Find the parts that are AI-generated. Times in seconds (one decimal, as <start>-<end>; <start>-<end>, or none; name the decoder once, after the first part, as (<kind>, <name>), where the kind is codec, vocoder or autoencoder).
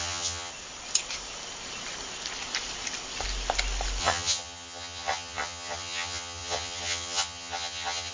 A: 0.0-0.5 (vocoder, HiFi-GAN); 4.0-8.1